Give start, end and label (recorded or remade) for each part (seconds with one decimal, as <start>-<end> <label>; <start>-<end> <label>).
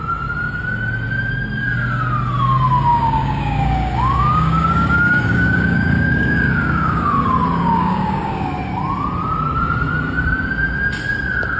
0.0-2.9 recorded; 2.9-7.1 remade; 7.1-7.6 recorded; 7.6-8.5 remade; 8.5-11.6 recorded